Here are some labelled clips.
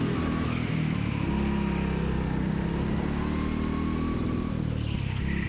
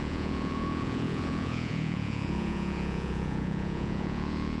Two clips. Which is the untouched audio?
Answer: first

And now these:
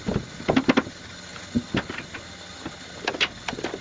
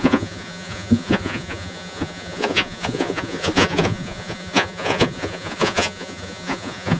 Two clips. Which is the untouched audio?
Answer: first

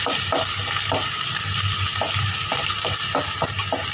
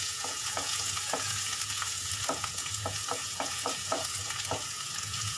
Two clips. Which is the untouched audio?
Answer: first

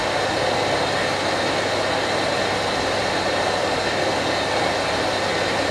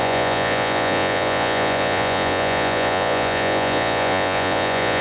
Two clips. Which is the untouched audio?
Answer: first